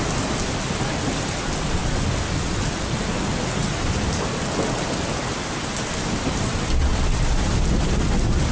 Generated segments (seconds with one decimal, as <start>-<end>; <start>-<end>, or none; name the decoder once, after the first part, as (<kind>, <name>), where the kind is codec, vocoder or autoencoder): 1.8-5.6 (vocoder, BigVGAN v2)